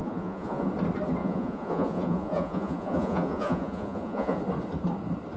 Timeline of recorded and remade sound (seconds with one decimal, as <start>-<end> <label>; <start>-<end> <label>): 0.0-0.7 remade; 0.7-1.2 recorded; 1.2-4.4 remade; 4.4-5.4 recorded